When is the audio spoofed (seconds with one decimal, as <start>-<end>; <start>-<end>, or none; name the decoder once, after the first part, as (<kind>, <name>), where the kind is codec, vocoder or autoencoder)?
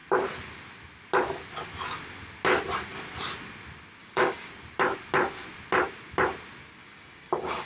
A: 4.0-4.5 (codec, DAC); 6.8-7.7